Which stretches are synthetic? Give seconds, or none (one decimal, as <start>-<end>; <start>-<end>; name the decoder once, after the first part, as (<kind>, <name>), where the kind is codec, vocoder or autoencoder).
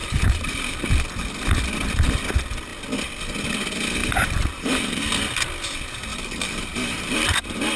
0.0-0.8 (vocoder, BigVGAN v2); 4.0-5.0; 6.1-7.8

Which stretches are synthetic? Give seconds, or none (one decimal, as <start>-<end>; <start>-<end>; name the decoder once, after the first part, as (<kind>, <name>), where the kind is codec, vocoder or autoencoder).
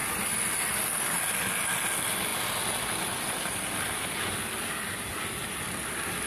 none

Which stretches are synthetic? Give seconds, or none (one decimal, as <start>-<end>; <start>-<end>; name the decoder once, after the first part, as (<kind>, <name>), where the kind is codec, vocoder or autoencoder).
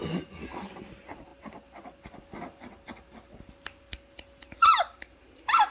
none